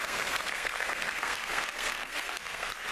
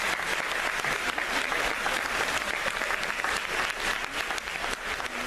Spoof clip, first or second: first